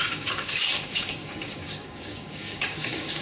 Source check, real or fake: fake